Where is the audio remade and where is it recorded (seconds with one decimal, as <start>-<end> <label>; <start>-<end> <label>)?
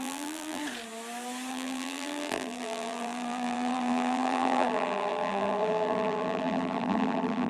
0.0-0.6 remade; 0.6-1.5 recorded; 1.5-7.5 remade